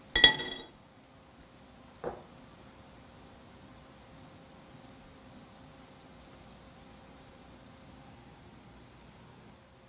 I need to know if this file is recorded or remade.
recorded